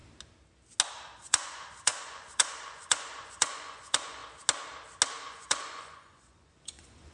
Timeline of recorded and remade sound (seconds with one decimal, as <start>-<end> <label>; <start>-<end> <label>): 0.0-0.9 recorded; 0.9-4.2 remade; 4.2-5.2 recorded; 5.2-7.1 remade